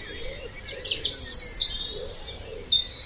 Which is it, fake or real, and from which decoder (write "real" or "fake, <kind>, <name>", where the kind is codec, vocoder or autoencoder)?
real